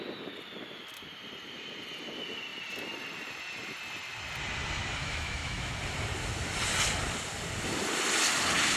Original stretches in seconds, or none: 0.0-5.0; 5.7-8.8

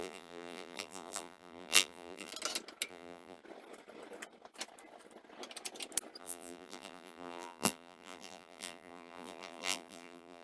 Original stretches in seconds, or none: 2.3-2.9; 3.4-6.2

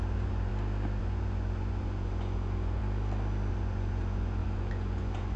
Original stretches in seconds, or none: 0.5-1.0; 2.8-3.5

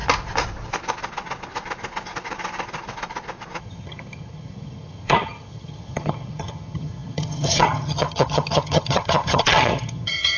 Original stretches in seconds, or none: 0.0-3.6

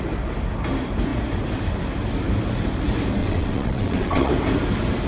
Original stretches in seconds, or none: 0.0-3.2; 4.3-5.1

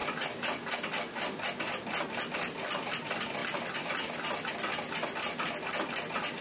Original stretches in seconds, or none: 0.0-6.4